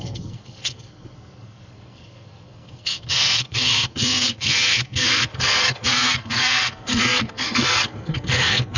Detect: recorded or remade remade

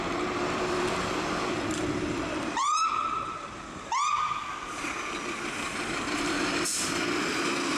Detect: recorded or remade remade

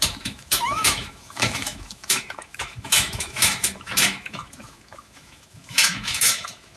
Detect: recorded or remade remade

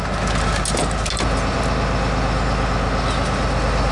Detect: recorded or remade recorded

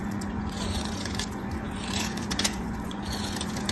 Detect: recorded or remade remade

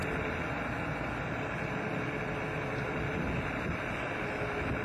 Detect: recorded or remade recorded